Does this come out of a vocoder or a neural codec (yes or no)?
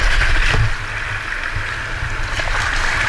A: no